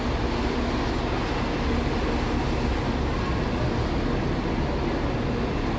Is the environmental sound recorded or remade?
recorded